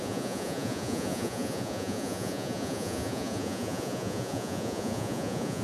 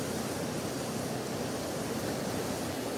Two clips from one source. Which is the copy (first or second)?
first